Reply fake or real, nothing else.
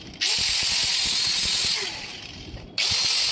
real